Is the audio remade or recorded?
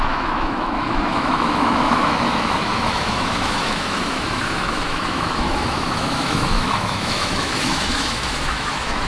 remade